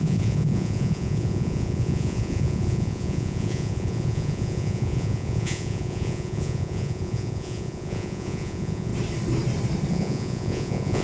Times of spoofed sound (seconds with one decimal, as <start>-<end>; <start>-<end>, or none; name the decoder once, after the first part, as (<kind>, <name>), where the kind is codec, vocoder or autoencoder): 0.0-8.9 (vocoder, Vocos); 9.9-11.0

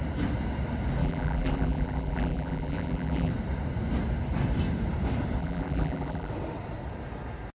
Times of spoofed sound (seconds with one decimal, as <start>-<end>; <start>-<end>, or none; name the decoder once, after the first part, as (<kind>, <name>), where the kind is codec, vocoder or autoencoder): 1.0-3.3 (vocoder, BigVGAN v2); 5.4-6.3